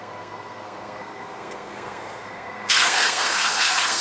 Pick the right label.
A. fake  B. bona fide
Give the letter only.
A